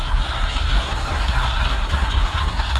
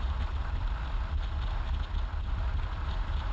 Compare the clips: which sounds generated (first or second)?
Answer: first